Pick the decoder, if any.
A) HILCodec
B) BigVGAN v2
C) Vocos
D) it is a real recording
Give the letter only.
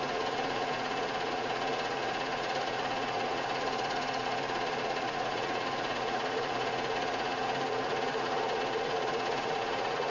C